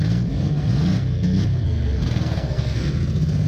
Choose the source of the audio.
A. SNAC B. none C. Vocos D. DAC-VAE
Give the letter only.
A